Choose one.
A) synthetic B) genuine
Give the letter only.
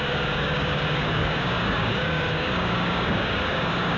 A